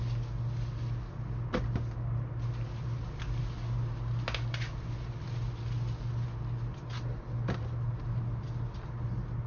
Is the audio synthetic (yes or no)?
no